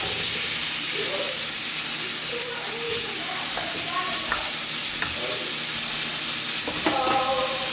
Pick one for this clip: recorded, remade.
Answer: recorded